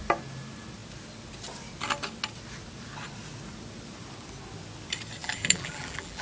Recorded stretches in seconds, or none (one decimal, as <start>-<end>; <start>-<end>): 0.0-5.2